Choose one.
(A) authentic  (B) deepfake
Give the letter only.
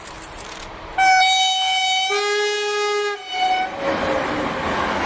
A